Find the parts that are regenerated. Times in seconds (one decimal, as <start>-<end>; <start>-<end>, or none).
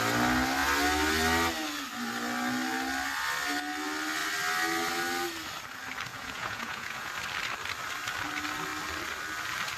6.1-7.1